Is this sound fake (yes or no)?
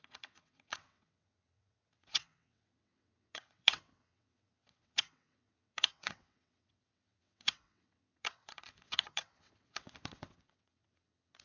yes